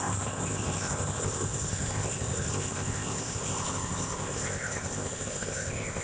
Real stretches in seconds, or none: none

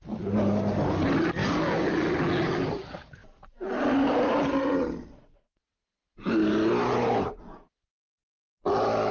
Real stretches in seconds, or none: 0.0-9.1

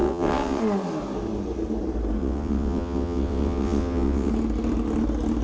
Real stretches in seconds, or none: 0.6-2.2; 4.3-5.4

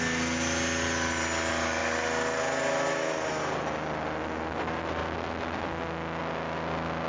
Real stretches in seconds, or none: 0.0-7.1

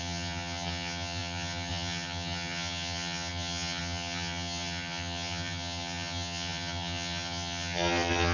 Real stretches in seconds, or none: none

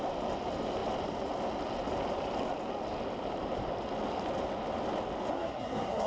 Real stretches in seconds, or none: 0.0-5.3

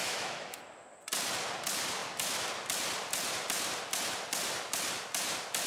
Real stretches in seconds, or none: 0.6-5.7

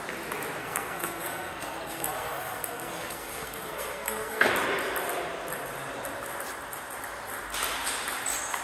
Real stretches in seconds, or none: 0.0-0.6; 4.5-8.6